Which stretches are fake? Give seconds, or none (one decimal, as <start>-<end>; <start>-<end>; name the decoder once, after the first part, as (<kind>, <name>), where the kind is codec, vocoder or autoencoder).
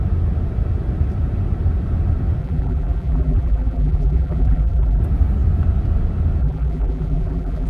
2.4-5.0 (vocoder, BigVGAN v2); 6.4-7.7